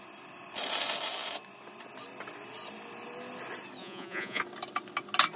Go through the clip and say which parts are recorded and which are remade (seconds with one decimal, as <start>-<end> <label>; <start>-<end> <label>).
0.0-3.8 recorded; 3.8-4.4 remade; 4.4-5.4 recorded